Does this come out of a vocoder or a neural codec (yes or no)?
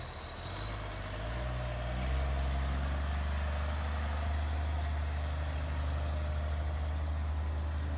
no